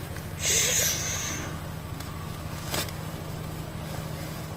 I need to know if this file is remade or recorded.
recorded